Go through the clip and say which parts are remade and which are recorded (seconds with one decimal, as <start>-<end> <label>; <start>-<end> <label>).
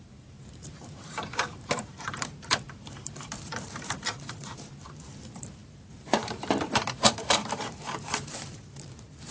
0.0-9.3 remade